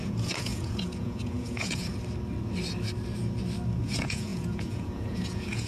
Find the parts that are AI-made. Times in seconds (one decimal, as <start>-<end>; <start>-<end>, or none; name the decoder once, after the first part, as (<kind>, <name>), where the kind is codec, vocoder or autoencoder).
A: 0.0-1.9 (vocoder, Vocos); 3.8-5.7